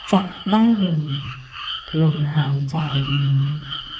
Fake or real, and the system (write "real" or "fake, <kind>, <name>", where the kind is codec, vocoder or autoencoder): fake, codec, SNAC